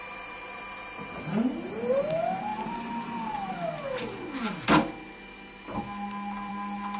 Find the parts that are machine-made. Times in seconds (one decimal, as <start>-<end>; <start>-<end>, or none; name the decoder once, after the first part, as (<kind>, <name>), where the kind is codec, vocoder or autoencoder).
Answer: none